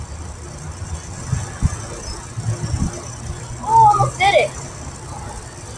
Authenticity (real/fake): real